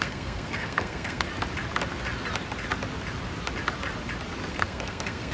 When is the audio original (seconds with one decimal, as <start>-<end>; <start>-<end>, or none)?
1.3-4.5